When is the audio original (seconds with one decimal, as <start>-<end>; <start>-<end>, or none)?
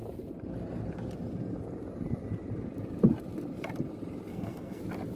0.0-4.3; 4.8-5.2